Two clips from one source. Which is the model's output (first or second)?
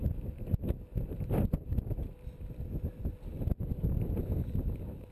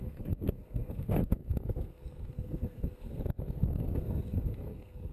second